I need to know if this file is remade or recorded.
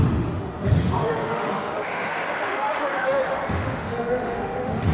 remade